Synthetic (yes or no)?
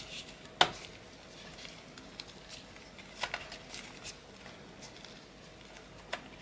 no